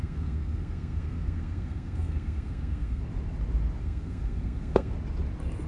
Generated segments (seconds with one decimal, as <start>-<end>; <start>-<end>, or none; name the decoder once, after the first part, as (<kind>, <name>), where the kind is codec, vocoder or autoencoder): 0.0-3.0 (codec, SNAC); 3.8-4.9